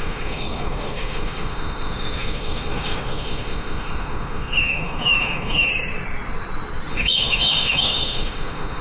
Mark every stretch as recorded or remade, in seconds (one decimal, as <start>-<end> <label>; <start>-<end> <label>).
0.0-5.7 remade; 5.7-6.9 recorded; 6.9-8.8 remade